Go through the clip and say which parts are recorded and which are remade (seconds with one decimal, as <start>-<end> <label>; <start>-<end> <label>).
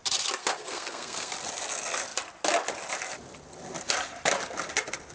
0.0-0.4 recorded; 0.4-1.3 remade; 1.3-5.1 recorded